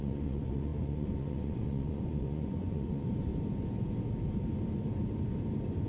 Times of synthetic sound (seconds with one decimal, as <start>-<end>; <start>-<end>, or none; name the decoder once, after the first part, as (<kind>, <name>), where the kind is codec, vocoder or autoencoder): 0.0-3.3 (vocoder, Vocos)